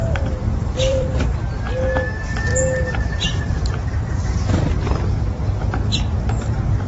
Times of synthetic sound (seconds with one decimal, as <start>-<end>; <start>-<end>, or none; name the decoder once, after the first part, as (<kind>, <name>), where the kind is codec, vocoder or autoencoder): 0.0-1.4 (vocoder, BigVGAN v2)